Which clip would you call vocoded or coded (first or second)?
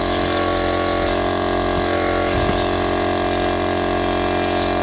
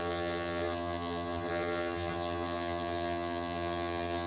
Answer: second